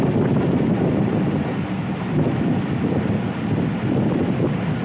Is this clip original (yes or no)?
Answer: yes